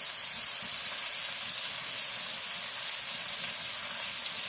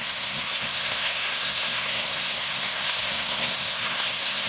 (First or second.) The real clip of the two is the first